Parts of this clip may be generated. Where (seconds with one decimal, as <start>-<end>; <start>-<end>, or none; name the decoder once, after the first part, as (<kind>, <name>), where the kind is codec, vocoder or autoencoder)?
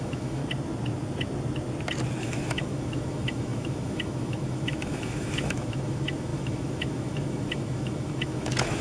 0.0-0.4 (autoencoder, DAC-VAE); 2.2-8.8